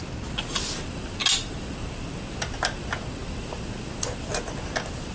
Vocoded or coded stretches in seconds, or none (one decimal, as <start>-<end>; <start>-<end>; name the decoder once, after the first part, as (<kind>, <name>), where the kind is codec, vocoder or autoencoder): none